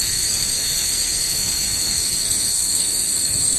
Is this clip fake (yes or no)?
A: yes